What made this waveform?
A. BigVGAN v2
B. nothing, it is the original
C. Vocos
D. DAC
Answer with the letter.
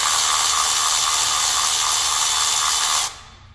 B